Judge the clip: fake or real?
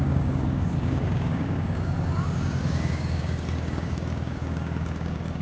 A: fake